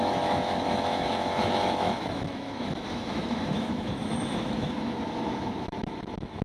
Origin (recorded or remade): remade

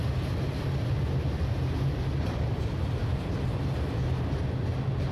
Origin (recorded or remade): recorded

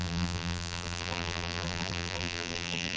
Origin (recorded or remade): remade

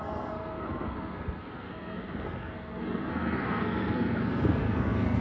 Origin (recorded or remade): remade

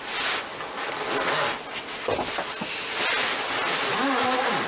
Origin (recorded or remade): recorded